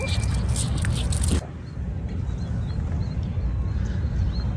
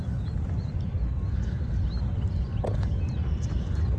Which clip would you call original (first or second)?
first